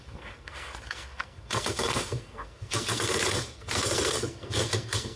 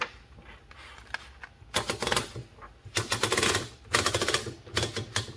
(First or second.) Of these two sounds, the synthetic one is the first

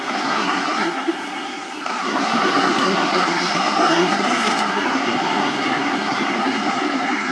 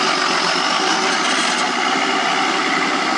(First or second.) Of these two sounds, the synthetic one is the first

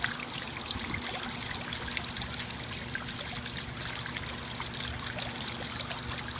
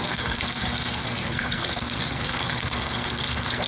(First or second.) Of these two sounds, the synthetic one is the second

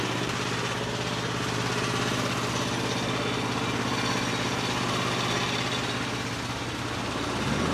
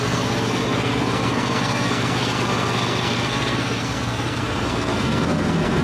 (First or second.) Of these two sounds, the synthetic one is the second